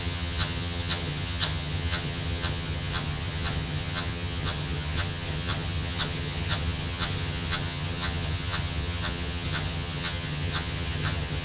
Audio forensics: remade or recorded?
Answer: remade